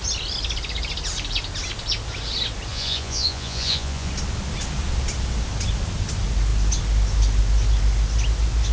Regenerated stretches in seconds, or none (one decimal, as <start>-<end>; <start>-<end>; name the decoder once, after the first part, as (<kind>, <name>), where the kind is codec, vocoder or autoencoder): 2.7-4.1 (vocoder, Vocos)